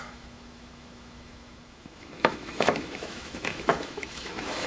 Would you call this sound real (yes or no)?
no